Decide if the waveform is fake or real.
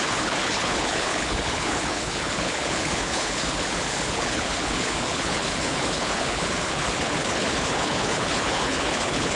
fake